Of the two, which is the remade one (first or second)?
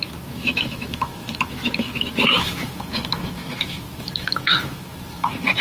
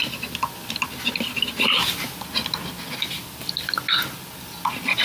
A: first